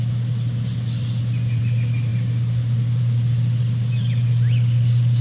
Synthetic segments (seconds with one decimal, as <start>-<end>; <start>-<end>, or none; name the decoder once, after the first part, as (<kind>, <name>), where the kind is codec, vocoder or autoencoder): none

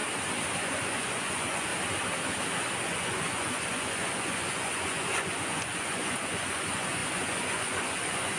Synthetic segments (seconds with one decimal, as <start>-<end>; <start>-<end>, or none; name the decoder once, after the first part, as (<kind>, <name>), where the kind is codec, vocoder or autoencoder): 0.6-1.7 (vocoder, Vocos); 2.8-8.4